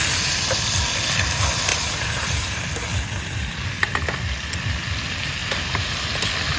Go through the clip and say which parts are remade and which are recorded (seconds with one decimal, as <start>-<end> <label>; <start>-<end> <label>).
0.0-1.7 recorded; 1.7-2.6 remade; 2.6-6.6 recorded